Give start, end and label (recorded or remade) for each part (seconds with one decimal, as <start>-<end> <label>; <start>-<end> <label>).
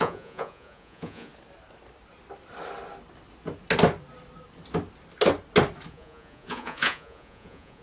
0.0-1.3 remade; 1.3-5.9 recorded; 5.9-7.8 remade